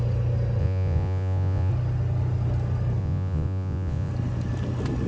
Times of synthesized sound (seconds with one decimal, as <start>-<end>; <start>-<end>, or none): 0.6-1.7; 3.0-4.1